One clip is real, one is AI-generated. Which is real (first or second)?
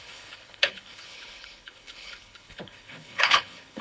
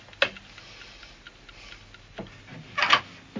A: second